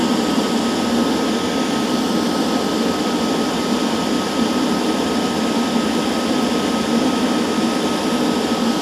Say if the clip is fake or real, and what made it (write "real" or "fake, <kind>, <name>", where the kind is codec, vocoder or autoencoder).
real